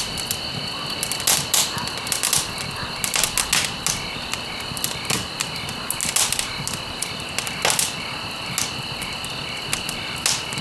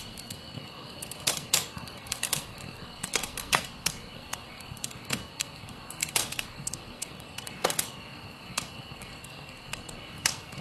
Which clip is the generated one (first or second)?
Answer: second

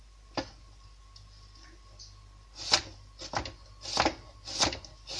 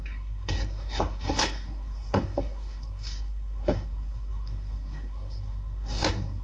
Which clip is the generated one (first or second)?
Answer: second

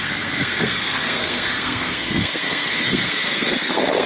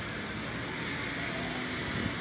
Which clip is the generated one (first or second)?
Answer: first